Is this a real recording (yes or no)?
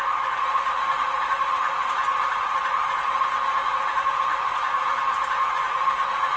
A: no